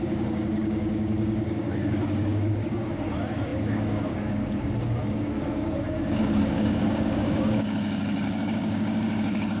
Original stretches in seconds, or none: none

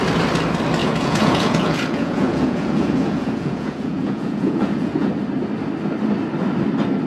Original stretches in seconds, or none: 0.0-0.8; 5.1-7.1

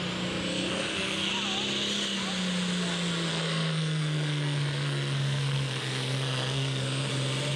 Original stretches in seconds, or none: 0.0-0.5; 1.3-3.3; 7.1-7.6

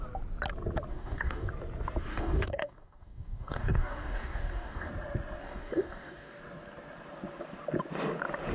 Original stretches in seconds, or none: 0.0-0.9; 1.5-2.1; 4.9-5.4; 6.4-8.5

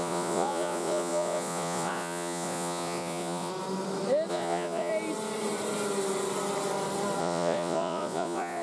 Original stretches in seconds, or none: 3.5-4.3; 4.9-7.2

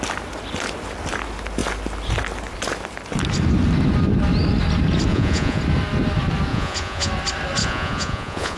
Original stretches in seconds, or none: 0.0-5.1; 5.6-6.5; 7.1-7.6

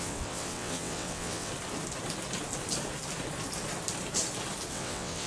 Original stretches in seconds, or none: 1.5-4.7

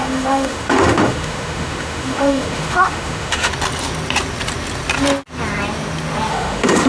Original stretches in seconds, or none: 3.5-6.3